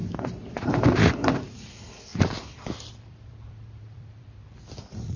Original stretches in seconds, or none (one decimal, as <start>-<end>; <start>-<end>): none